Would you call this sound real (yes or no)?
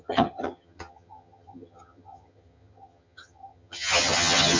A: no